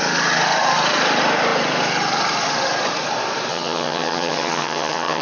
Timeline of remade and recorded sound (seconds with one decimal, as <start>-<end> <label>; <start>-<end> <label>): 0.0-3.5 recorded; 3.5-5.2 remade